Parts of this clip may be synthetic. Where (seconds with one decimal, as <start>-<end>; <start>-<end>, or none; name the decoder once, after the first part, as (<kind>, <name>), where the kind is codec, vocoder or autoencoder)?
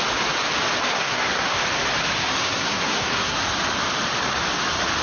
0.9-1.6 (codec, SNAC); 2.3-3.4